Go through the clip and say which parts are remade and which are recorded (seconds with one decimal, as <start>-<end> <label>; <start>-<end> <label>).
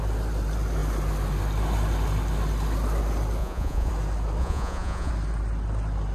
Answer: 0.0-3.4 recorded; 3.4-3.9 remade; 3.9-4.4 recorded; 4.4-5.1 remade; 5.1-6.1 recorded